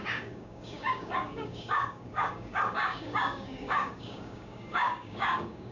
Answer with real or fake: fake